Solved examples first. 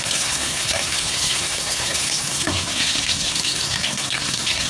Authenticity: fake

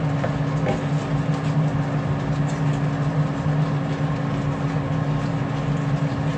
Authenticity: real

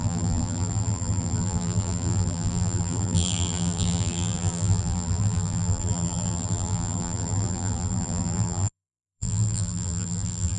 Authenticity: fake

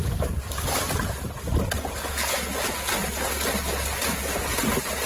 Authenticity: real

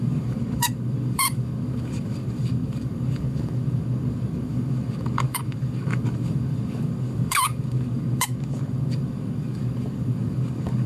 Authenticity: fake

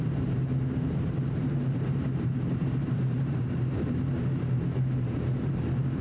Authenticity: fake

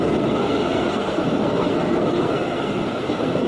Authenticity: fake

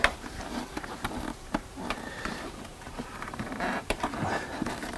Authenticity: fake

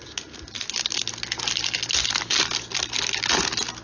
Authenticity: real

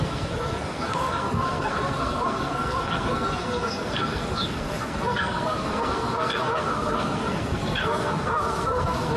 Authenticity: fake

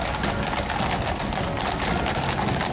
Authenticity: real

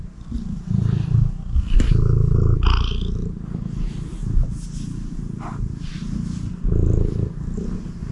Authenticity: real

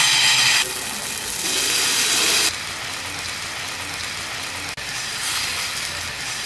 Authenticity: real